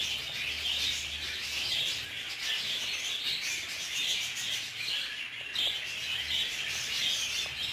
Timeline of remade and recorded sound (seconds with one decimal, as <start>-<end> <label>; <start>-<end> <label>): 0.0-7.7 recorded